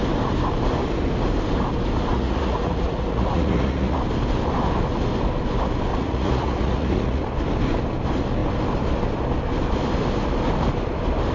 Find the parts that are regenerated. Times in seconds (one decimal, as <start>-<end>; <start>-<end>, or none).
2.1-4.0; 5.9-7.2